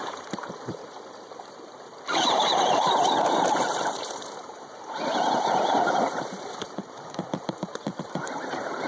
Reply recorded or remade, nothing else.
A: remade